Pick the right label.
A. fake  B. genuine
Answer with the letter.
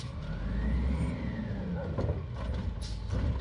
B